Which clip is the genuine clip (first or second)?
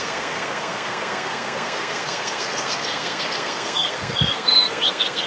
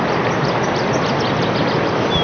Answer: second